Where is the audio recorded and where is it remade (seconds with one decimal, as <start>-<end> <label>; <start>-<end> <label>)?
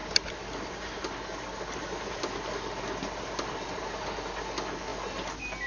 0.0-5.7 recorded